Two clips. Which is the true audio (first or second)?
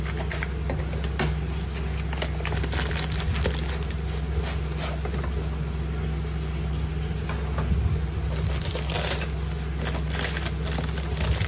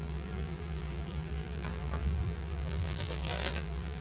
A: first